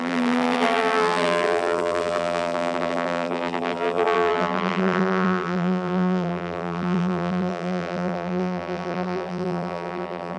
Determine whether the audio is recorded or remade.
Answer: remade